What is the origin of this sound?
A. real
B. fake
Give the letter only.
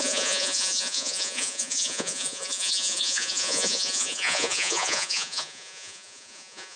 B